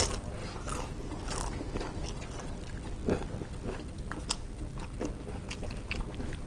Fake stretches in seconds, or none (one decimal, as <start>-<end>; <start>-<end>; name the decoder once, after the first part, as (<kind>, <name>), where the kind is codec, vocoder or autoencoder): none